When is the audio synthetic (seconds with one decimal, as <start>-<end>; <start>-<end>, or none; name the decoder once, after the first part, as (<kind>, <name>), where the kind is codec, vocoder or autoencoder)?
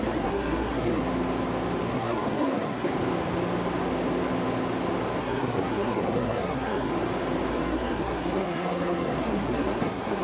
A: 0.0-1.0 (codec, SNAC); 1.9-2.9; 5.2-6.9; 7.5-10.2